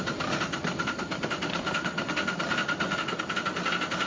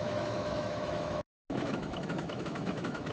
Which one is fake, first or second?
second